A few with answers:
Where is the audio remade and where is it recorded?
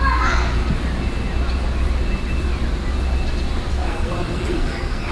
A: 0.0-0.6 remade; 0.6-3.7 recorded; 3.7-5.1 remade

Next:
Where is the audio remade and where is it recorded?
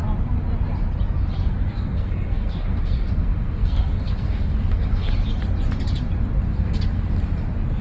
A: 0.0-1.5 recorded; 1.5-5.1 remade; 5.1-6.5 recorded; 6.5-7.1 remade; 7.1-7.8 recorded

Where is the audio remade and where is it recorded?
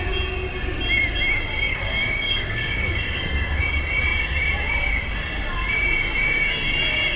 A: 0.0-1.7 recorded; 1.7-3.6 remade; 3.6-7.2 recorded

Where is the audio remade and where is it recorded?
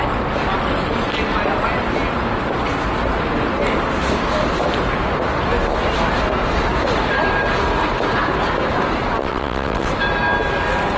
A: 0.0-9.2 recorded; 9.2-9.9 remade; 9.9-11.0 recorded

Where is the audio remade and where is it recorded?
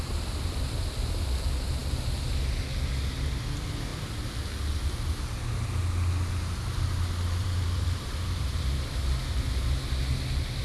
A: 0.0-7.4 recorded; 7.4-8.9 remade; 8.9-10.6 recorded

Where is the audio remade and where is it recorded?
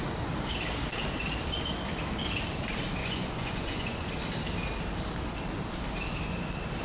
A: 0.0-3.0 recorded; 3.0-4.1 remade; 4.1-6.8 recorded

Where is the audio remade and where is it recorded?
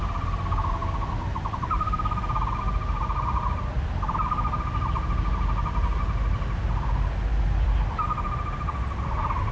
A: 0.0-9.5 recorded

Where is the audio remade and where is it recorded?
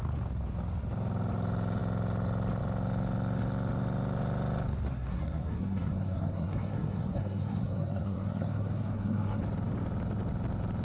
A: 0.0-4.9 recorded; 4.9-9.4 remade; 9.4-10.8 recorded